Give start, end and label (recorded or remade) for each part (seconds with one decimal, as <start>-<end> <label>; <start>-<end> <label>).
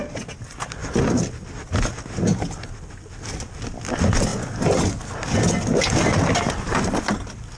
0.0-7.6 recorded